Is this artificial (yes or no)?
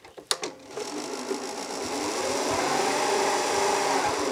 no